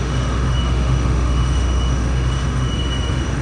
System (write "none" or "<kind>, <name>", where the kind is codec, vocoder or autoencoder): autoencoder, DAC-VAE